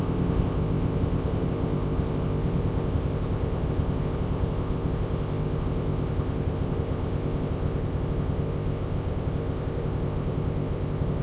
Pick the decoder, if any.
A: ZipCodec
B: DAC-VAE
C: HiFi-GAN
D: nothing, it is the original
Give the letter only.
A